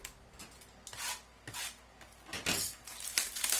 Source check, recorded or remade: recorded